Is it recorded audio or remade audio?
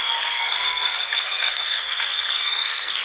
remade